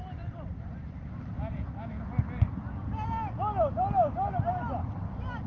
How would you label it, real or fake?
real